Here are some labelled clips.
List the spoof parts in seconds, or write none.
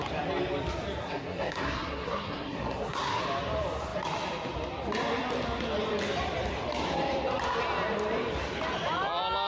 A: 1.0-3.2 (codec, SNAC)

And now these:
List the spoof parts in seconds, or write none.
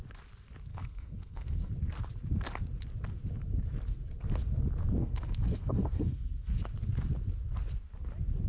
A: 0.7-1.7 (codec, SNAC); 5.0-6.6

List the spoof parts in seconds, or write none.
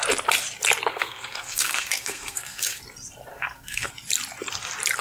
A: 0.9-2.8 (codec, SNAC); 3.3-3.9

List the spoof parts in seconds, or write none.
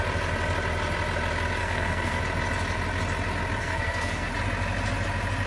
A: 1.6-2.2 (codec, SNAC); 3.6-4.3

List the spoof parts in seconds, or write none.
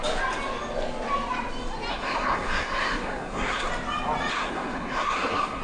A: 1.9-3.7 (codec, SNAC); 4.3-5.6